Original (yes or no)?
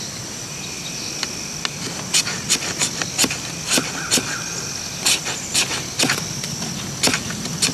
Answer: yes